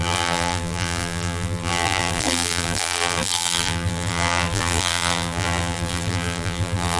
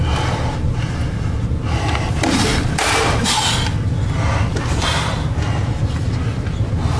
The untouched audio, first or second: second